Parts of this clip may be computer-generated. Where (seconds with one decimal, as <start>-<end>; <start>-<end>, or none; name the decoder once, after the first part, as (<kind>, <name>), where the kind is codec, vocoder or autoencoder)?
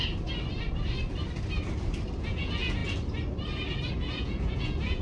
2.2-2.8 (vocoder, Vocos); 3.9-5.0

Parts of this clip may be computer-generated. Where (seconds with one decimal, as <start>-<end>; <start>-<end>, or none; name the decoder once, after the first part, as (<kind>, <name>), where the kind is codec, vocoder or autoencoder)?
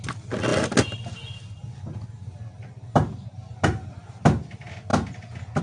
none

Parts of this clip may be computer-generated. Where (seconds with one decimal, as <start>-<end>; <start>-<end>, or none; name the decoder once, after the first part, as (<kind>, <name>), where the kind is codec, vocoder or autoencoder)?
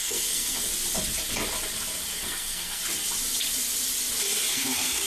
0.0-0.7 (codec, SNAC); 2.2-2.8; 4.5-5.1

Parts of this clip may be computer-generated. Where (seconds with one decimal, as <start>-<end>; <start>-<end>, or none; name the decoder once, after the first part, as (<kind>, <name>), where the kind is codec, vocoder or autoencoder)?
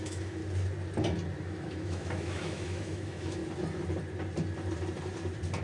0.0-0.4 (autoencoder, DAC-VAE); 1.4-3.4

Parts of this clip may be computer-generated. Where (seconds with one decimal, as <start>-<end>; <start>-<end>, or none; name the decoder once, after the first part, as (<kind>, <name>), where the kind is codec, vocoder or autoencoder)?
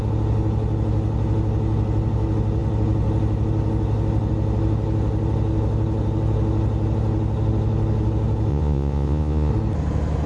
8.5-9.5 (vocoder, Vocos)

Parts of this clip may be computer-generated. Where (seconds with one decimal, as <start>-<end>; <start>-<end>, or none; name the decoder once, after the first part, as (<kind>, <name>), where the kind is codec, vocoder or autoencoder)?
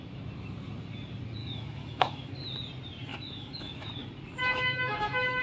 1.4-2.3 (autoencoder, DAC-VAE); 3.1-3.9; 4.4-5.4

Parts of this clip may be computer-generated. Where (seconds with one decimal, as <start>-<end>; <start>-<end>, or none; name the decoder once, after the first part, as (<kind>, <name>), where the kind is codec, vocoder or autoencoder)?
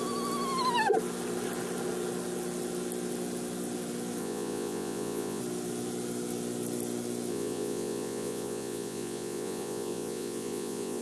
4.2-5.4 (vocoder, Vocos); 7.3-11.0